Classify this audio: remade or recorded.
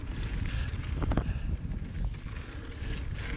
recorded